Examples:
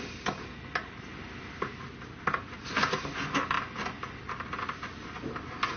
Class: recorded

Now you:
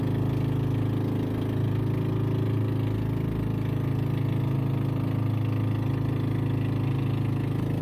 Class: recorded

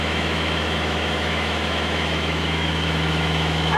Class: remade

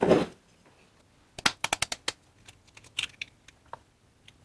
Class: recorded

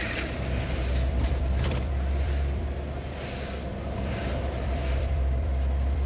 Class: remade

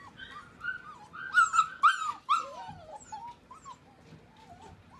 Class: recorded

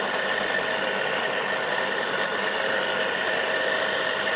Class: recorded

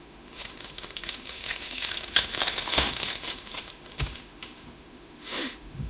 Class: remade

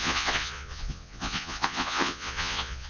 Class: remade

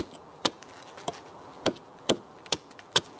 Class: remade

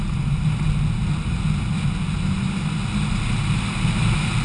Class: recorded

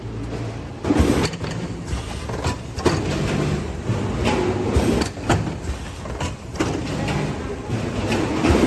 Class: recorded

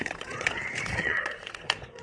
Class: remade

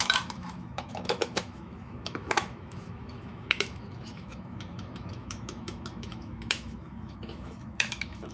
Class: remade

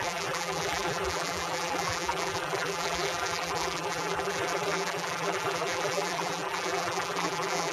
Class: remade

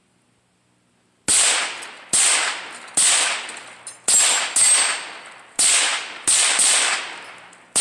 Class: recorded